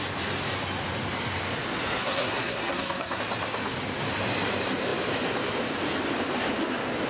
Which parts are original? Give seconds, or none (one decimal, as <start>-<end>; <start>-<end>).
0.0-2.0; 3.2-7.1